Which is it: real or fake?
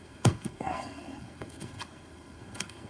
fake